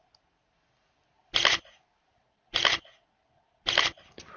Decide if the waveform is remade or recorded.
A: recorded